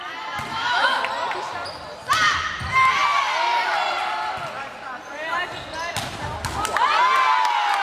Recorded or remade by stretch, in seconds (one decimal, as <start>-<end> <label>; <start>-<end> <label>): 0.0-0.5 recorded; 0.5-1.0 remade; 1.0-7.8 recorded